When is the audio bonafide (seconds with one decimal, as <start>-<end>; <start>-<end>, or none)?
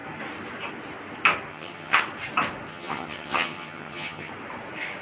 0.0-1.5; 2.0-2.7; 4.3-5.0